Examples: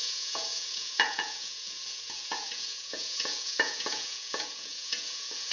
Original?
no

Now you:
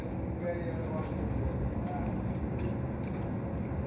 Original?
yes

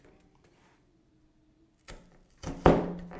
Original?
yes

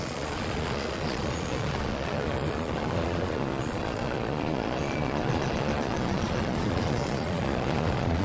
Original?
no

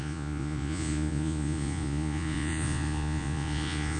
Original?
no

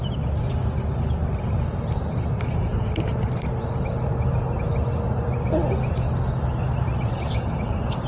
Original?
yes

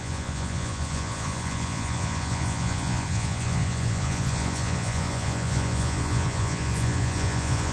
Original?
no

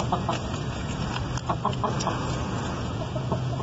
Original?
no